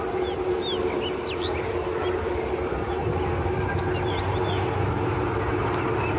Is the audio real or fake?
real